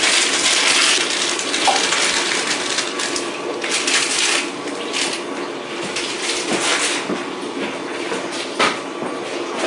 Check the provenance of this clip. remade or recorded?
recorded